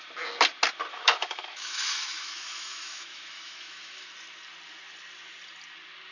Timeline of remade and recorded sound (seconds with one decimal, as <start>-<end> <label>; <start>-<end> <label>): 0.0-0.9 recorded; 0.9-4.1 remade; 4.1-6.1 recorded